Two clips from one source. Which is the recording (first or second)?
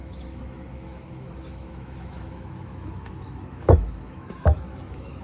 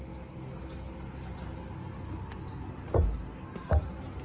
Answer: second